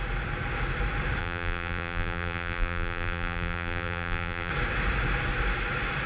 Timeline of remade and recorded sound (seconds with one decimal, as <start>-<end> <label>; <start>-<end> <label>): 0.0-1.2 recorded; 1.2-4.5 remade; 4.5-6.1 recorded